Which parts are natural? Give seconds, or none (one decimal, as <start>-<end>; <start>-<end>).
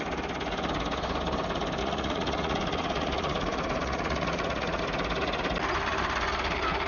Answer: 0.0-1.8; 4.8-6.9